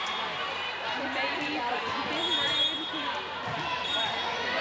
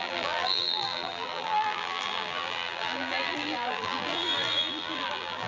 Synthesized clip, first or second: second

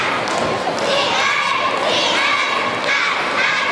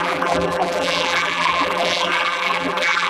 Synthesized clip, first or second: second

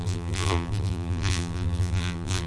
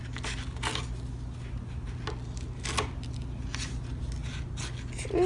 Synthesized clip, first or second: first